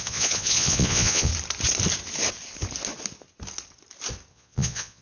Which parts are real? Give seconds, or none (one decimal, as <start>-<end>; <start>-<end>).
1.3-4.3